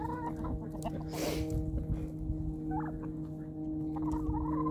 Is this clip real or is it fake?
real